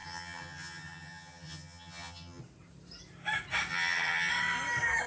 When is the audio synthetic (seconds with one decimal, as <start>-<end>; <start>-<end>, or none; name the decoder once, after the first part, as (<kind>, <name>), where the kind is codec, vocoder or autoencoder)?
0.0-2.4 (vocoder, HiFi-GAN); 3.7-4.3

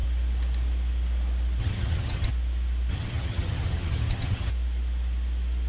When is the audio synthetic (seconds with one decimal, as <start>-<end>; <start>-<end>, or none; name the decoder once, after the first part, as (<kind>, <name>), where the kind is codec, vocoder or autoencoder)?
1.6-2.3 (vocoder, HiFi-GAN); 2.9-4.5

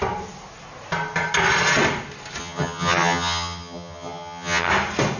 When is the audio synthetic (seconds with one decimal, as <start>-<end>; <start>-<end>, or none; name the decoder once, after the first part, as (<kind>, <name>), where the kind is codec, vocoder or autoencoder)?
2.4-4.7 (vocoder, HiFi-GAN)

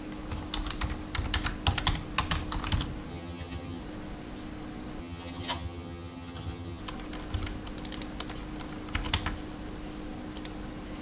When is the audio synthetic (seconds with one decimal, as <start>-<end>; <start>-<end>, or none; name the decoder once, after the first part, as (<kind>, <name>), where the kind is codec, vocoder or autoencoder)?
3.1-3.8 (vocoder, HiFi-GAN); 5.0-6.8

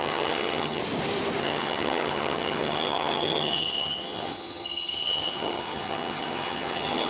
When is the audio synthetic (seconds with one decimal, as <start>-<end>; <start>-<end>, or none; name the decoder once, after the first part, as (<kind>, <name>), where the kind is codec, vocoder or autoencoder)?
0.0-0.8 (vocoder, HiFi-GAN); 1.4-7.1

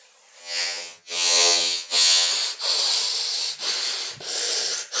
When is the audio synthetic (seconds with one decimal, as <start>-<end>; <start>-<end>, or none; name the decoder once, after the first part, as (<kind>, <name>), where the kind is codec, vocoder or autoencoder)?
0.4-2.3 (vocoder, HiFi-GAN)

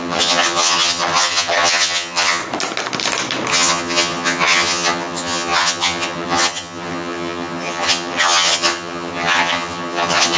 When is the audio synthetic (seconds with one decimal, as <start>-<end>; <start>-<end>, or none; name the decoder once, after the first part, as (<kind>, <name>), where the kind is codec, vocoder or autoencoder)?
0.0-2.4 (vocoder, HiFi-GAN); 3.5-10.4